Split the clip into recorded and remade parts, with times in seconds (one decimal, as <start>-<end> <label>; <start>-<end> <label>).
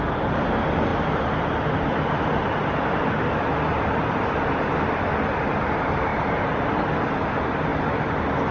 0.0-8.5 recorded